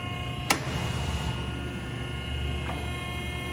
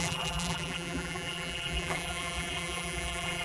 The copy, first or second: second